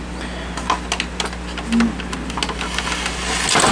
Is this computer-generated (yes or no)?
no